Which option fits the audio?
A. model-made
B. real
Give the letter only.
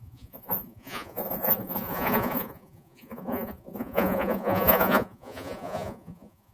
A